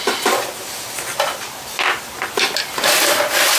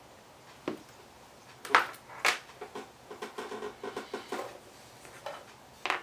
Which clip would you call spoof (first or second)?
first